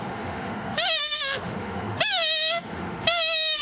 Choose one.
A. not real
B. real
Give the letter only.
A